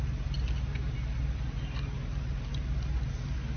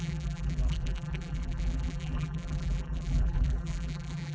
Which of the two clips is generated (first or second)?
second